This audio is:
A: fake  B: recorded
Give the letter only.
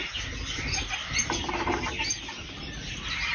B